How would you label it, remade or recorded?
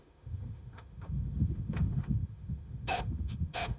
remade